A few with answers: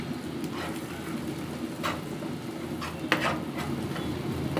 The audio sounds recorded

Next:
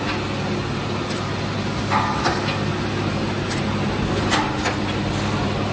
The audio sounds recorded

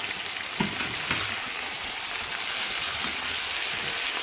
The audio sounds recorded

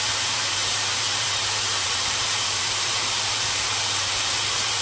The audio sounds remade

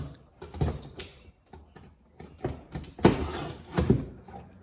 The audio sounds recorded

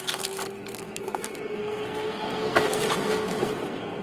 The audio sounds remade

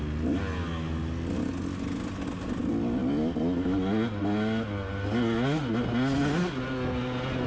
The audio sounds recorded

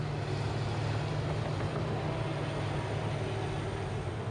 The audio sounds recorded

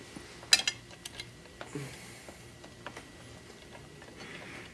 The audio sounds recorded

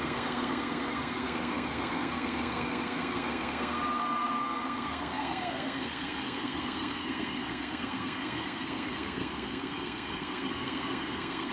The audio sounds remade